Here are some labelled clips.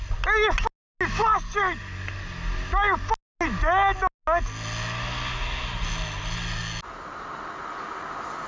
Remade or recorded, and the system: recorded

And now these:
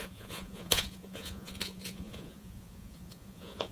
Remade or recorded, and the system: remade, vocoder, Vocos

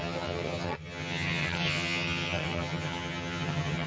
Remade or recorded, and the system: remade, vocoder, HiFi-GAN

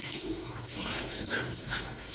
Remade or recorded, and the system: remade, codec, SNAC